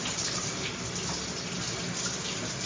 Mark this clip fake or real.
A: real